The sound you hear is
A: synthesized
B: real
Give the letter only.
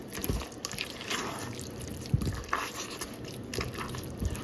A